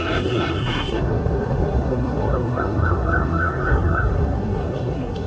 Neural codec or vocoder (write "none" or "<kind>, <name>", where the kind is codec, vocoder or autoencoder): codec, SNAC